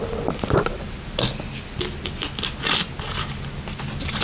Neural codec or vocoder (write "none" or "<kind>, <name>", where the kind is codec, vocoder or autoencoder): none